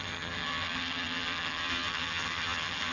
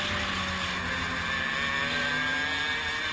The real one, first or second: second